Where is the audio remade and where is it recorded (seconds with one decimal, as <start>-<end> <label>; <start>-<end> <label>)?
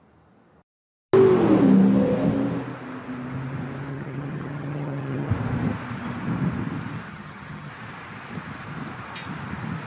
0.0-3.9 recorded; 3.9-5.3 remade; 5.3-7.1 recorded; 7.1-7.7 remade; 7.7-9.9 recorded